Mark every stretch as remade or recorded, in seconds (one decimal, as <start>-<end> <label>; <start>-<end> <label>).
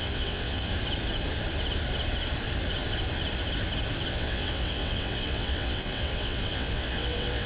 0.0-0.7 remade; 0.7-4.1 recorded; 4.1-7.5 remade